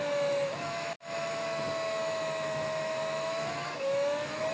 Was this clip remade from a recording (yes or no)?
yes